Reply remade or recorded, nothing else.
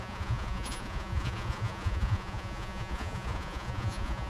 remade